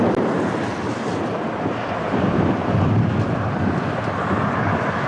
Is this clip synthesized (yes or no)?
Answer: no